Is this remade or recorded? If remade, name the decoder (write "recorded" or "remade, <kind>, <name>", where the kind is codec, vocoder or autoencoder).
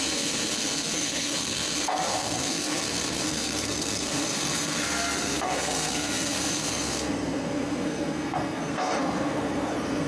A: remade, codec, SNAC